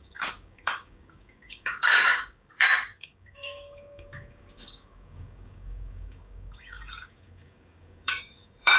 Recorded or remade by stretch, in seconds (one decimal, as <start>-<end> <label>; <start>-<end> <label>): 0.0-8.8 remade